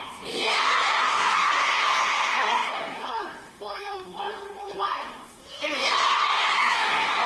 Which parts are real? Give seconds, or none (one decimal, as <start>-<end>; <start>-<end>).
none